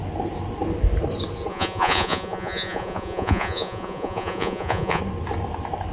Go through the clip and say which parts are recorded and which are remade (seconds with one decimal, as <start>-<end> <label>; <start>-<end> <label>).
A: 0.0-1.5 recorded; 1.5-5.0 remade; 5.0-5.9 recorded